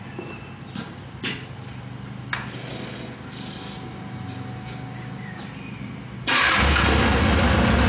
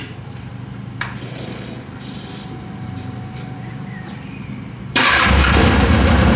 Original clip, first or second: first